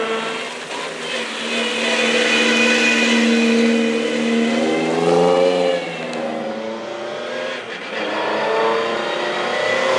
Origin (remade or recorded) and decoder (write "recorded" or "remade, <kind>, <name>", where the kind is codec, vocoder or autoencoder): recorded